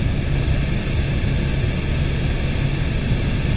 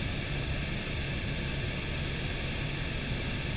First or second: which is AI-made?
second